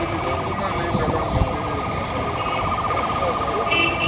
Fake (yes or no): yes